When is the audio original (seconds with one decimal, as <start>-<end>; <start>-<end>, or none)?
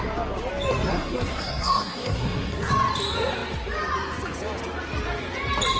0.0-0.9; 2.7-5.8